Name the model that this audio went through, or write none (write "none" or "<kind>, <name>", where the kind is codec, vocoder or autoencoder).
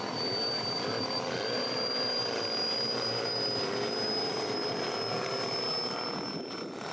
none